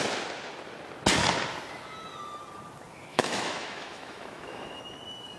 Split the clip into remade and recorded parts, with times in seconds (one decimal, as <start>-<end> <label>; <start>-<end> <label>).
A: 0.0-3.1 recorded; 3.1-4.8 remade; 4.8-5.4 recorded